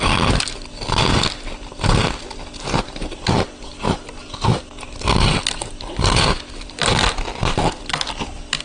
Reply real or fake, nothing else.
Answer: real